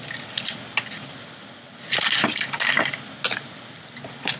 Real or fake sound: real